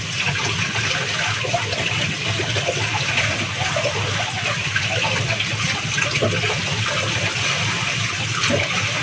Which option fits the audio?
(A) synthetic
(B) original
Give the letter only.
B